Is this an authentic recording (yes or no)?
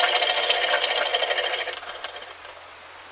yes